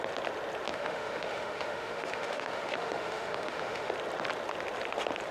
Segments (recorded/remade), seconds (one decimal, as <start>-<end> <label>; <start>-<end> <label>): 0.0-0.7 recorded; 0.7-3.9 remade; 3.9-5.3 recorded